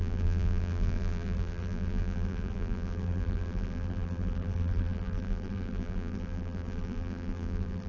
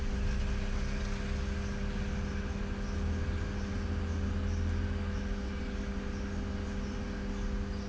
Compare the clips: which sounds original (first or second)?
second